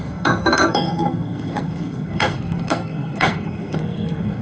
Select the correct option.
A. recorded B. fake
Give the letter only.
B